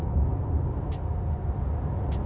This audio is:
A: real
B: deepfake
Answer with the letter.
A